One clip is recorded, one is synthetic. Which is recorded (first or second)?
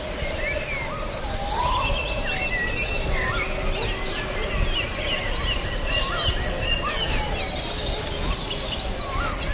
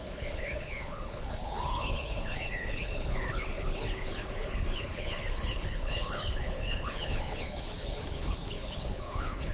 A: first